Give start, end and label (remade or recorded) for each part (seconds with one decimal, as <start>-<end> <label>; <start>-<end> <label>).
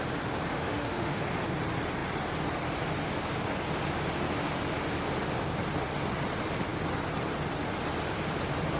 0.0-0.5 recorded; 0.5-1.2 remade; 1.2-8.8 recorded